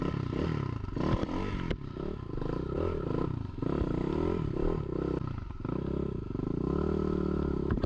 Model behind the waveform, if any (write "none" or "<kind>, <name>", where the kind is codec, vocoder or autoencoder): none